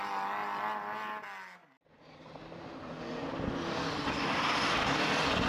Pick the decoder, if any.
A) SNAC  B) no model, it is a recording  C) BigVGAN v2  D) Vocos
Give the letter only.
B